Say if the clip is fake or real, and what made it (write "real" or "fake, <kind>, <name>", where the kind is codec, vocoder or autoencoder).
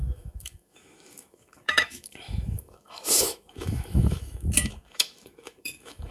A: fake, autoencoder, DAC-VAE